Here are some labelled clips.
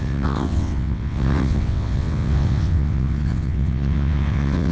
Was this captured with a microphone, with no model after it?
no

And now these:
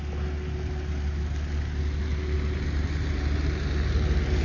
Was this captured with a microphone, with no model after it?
yes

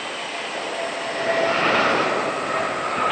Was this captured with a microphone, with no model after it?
yes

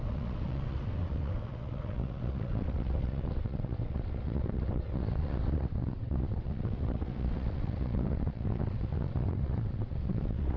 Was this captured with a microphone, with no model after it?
no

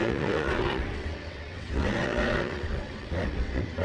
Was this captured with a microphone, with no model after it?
no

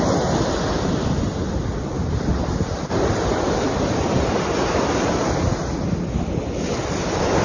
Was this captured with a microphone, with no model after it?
yes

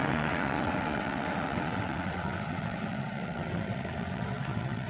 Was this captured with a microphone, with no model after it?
no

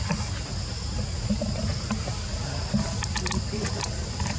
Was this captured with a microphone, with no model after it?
yes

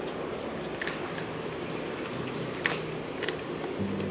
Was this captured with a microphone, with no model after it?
yes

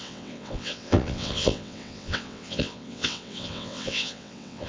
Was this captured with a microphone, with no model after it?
no